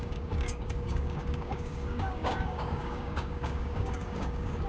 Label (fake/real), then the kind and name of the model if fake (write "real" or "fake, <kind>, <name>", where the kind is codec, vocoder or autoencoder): fake, codec, DAC